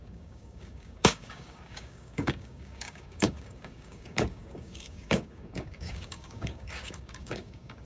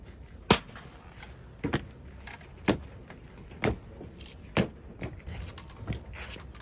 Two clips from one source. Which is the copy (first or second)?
first